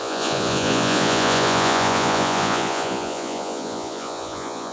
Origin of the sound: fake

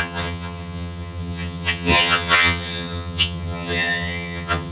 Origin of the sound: fake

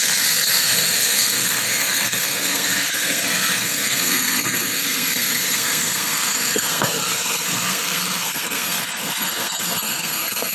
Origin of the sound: fake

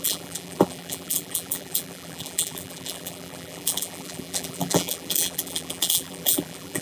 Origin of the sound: fake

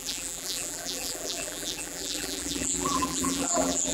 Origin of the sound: fake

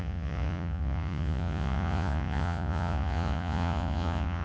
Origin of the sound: fake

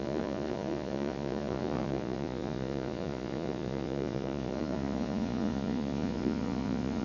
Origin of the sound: fake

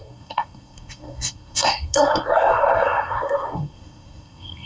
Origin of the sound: fake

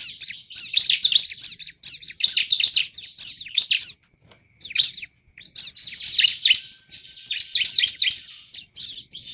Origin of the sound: real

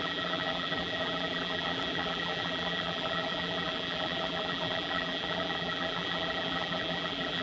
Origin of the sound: fake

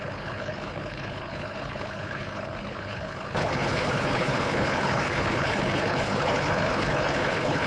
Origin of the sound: fake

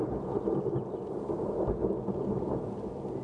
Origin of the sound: real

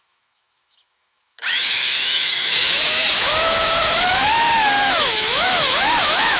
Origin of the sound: fake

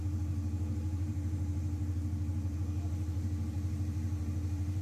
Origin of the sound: fake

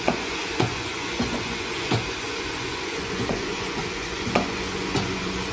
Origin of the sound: fake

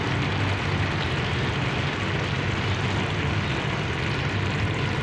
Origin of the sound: real